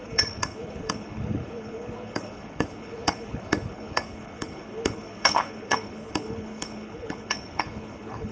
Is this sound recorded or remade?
remade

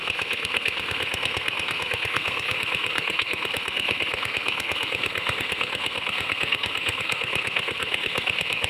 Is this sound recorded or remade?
remade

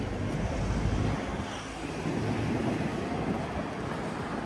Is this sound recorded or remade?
recorded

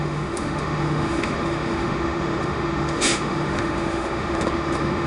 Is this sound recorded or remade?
remade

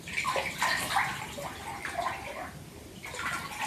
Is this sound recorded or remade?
recorded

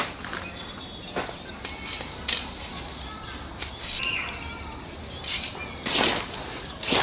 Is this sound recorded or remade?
recorded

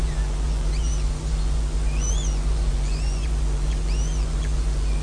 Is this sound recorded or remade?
remade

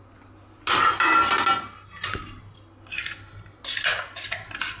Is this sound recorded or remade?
recorded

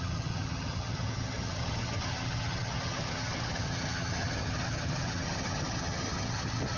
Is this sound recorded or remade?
remade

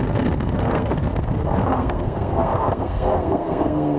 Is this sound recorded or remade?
remade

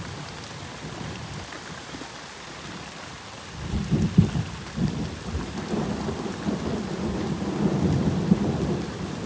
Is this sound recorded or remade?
recorded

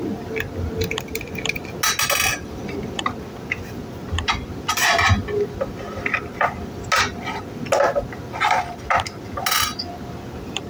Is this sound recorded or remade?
recorded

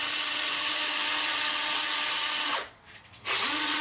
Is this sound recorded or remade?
remade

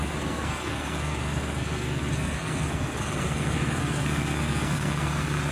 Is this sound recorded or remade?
remade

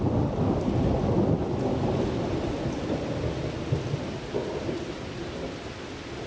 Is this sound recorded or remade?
recorded